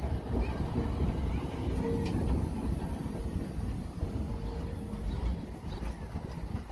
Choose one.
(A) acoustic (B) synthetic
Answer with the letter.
A